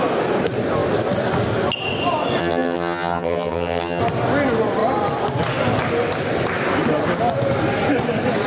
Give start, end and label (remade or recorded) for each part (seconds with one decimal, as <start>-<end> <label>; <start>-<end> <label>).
0.0-2.4 recorded; 2.4-4.0 remade; 4.0-8.5 recorded